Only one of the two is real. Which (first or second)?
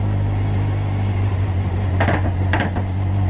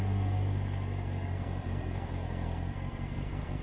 first